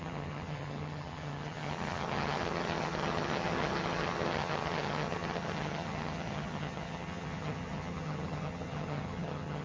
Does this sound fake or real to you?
fake